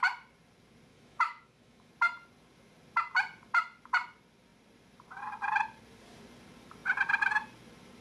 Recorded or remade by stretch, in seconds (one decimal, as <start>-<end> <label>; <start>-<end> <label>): 0.0-0.9 recorded; 0.9-1.9 remade; 1.9-8.0 recorded